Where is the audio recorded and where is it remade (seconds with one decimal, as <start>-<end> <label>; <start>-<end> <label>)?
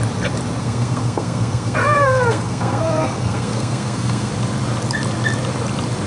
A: 0.0-0.6 recorded; 0.6-4.3 remade; 4.3-6.1 recorded